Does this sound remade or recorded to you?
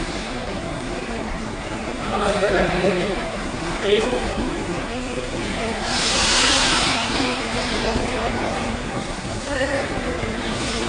remade